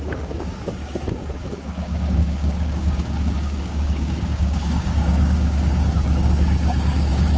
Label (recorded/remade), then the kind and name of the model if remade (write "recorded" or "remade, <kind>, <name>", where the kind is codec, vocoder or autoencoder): remade, codec, DAC